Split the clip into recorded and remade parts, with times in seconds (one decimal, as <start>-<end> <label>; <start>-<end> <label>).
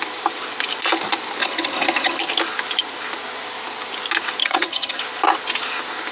0.0-1.4 recorded; 1.4-2.2 remade; 2.2-4.4 recorded; 4.4-5.0 remade; 5.0-6.1 recorded